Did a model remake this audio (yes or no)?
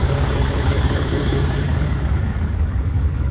yes